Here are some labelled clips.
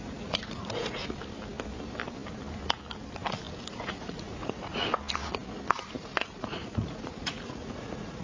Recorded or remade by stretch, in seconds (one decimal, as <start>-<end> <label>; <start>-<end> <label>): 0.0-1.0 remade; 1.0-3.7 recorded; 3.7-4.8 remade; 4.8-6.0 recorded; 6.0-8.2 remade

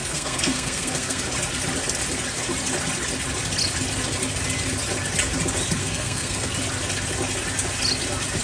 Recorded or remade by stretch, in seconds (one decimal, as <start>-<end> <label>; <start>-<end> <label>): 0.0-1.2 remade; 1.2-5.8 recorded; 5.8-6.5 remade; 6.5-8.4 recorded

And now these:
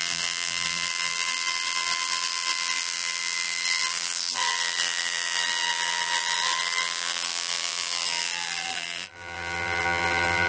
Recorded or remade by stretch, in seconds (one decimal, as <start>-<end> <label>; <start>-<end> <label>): 0.0-10.5 remade